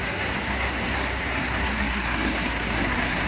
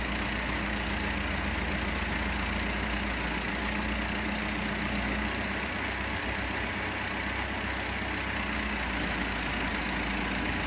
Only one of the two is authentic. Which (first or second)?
second